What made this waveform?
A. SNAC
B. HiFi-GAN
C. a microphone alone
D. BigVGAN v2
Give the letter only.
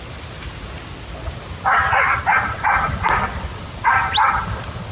C